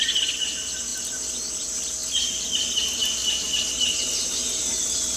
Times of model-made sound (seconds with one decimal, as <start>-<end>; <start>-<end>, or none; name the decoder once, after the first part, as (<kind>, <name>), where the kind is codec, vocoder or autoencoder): none